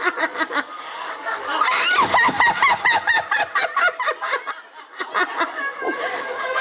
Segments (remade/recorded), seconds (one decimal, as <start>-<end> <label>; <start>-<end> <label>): 0.0-1.5 remade; 1.5-5.5 recorded; 5.5-6.6 remade